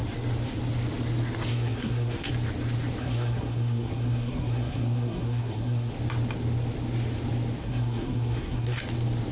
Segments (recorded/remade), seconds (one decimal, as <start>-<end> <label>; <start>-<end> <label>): 0.0-1.5 recorded; 1.5-2.3 remade; 2.3-3.0 recorded; 3.0-5.9 remade; 5.9-7.6 recorded; 7.6-8.8 remade; 8.8-9.3 recorded